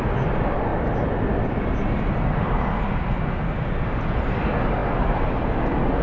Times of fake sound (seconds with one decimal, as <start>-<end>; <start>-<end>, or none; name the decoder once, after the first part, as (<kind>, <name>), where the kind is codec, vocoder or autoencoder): none